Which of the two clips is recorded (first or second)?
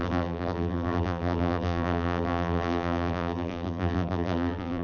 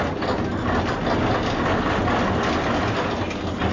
second